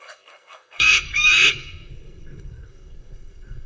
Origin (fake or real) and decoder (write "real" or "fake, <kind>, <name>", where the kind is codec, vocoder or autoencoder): fake, codec, SNAC